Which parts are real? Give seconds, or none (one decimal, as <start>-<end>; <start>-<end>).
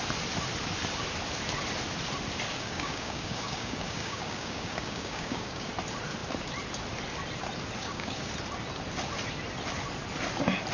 0.0-2.5; 5.7-7.8; 8.3-10.7